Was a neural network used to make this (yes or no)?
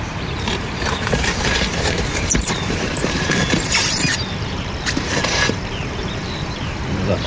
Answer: yes